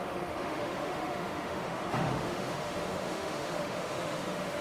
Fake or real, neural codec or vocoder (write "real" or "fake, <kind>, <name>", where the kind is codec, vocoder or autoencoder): fake, autoencoder, DAC-VAE